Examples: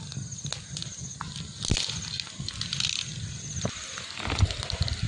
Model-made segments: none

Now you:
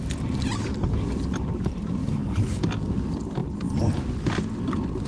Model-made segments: 2.0-2.6 (codec, HILCodec)

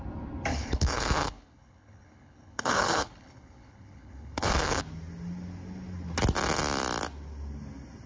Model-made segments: 0.5-4.8 (codec, HILCodec)

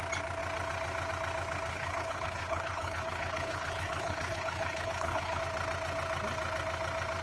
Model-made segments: 1.7-5.4 (codec, HILCodec)